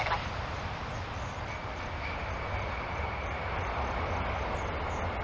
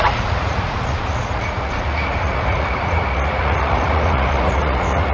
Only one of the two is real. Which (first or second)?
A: first